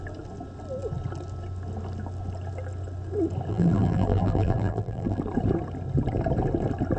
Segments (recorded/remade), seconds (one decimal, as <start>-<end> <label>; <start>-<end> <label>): 0.0-3.5 recorded; 3.5-5.2 remade; 5.2-7.0 recorded